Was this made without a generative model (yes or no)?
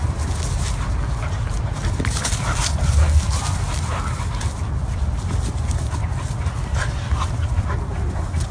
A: yes